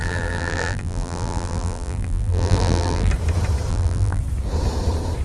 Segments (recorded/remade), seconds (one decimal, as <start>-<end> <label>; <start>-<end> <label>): 0.0-3.1 remade; 3.1-3.7 recorded; 3.7-4.2 remade; 4.2-5.2 recorded